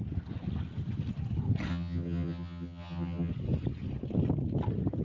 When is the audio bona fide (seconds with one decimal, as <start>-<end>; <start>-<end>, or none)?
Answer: 0.0-1.7; 3.3-5.0